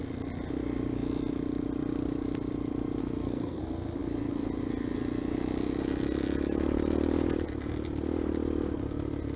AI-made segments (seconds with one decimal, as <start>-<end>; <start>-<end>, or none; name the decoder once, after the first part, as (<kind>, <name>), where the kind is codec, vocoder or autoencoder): 3.0-3.6 (codec, SNAC)